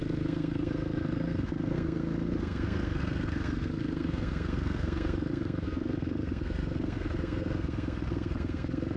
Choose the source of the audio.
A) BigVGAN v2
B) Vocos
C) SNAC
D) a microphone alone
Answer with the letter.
C